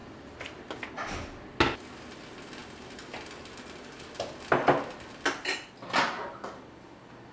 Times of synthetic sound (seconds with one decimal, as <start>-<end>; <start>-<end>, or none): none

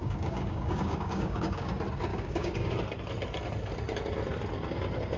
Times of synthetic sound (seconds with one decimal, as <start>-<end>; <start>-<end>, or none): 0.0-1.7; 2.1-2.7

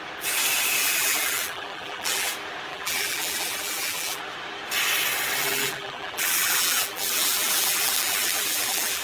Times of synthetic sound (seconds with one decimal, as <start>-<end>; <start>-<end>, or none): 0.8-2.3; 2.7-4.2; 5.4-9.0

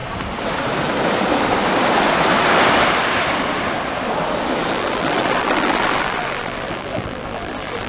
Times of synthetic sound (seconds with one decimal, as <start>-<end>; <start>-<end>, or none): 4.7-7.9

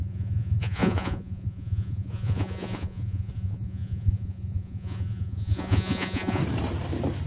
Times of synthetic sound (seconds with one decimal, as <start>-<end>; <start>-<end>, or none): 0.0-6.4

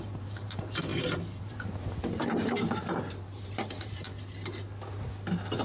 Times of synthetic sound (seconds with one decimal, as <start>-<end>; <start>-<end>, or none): 0.0-0.9; 1.4-4.1

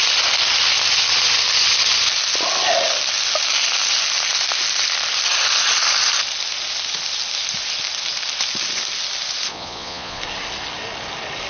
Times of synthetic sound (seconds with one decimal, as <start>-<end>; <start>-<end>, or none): 9.5-10.2